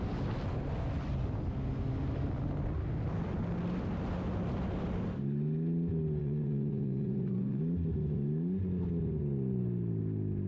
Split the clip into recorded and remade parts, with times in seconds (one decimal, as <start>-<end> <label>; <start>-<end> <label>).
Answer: 0.0-6.2 recorded; 6.2-7.6 remade; 7.6-10.5 recorded